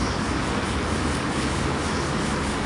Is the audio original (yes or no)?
no